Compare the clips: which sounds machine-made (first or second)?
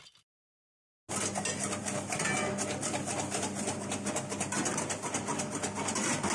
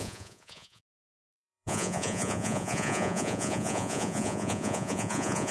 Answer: second